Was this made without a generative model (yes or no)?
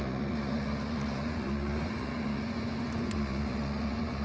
no